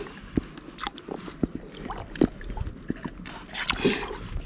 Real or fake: real